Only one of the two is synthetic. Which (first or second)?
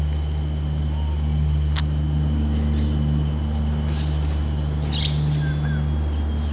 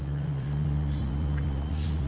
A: second